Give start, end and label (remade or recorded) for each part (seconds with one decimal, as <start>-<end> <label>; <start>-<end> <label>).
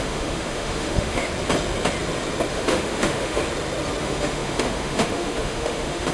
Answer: 0.0-1.3 remade; 1.3-2.5 recorded; 2.5-3.4 remade; 3.4-4.0 recorded; 4.0-6.1 remade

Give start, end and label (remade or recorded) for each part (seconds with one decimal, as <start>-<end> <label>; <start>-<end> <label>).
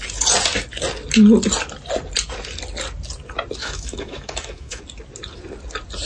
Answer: 0.0-3.6 recorded; 3.6-4.8 remade; 4.8-6.1 recorded